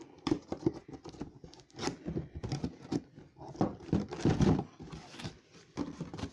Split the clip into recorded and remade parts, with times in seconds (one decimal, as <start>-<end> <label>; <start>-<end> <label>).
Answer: 0.0-6.3 recorded